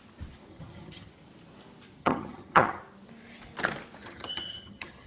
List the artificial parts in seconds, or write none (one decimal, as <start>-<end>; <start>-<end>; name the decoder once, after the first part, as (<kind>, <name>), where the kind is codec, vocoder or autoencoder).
0.5-1.1 (vocoder, HiFi-GAN); 2.0-2.8; 4.0-5.1

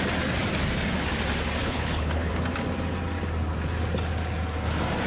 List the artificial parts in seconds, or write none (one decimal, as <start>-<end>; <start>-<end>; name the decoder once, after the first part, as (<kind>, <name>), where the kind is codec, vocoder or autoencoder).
1.6-2.3 (codec, HILCodec)

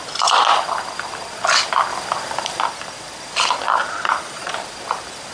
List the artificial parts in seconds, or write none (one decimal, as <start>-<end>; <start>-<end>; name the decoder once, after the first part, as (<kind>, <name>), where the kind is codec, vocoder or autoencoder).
3.8-4.5 (vocoder, Vocos)

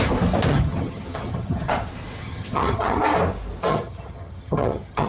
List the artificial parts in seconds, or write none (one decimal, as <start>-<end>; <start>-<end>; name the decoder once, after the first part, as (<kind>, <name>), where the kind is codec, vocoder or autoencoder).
0.5-1.7 (vocoder, HiFi-GAN); 2.2-3.0; 3.7-5.1